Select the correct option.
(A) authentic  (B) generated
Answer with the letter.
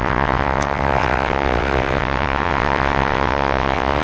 B